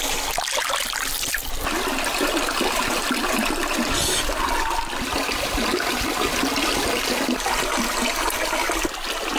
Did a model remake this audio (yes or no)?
no